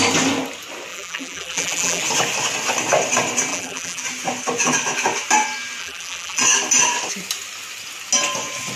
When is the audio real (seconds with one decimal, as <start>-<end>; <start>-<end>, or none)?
0.0-0.9; 2.0-3.5; 4.0-5.8; 6.4-8.8